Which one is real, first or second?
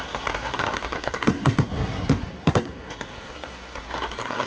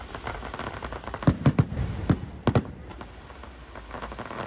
second